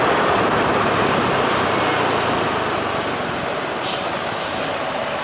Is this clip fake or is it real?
real